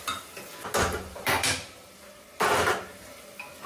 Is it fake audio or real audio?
real